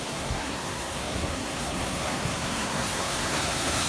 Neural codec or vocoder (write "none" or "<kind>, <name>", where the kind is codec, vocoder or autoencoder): codec, SNAC